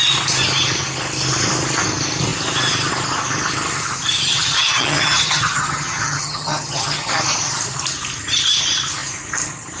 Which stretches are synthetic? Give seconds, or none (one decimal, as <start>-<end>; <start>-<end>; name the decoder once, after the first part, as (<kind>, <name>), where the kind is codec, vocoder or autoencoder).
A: 4.4-7.1 (vocoder, HiFi-GAN)